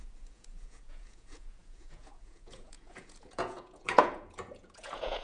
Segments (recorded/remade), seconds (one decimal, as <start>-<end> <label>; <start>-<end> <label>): 0.0-5.2 remade